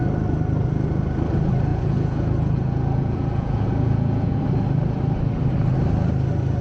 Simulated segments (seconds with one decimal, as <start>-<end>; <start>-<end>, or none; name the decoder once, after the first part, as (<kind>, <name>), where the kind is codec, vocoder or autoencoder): 1.7-4.4 (vocoder, Vocos)